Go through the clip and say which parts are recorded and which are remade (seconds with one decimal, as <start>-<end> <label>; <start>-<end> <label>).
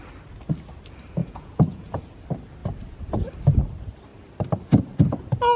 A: 0.0-1.2 recorded; 1.2-2.0 remade; 2.0-5.6 recorded